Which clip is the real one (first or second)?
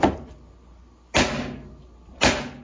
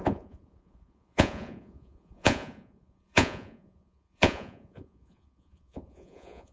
first